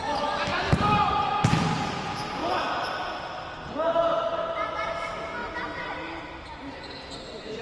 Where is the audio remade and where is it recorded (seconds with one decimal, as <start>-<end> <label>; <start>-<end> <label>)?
0.0-0.5 recorded; 0.5-1.3 remade; 1.3-2.4 recorded; 2.4-3.1 remade; 3.1-7.6 recorded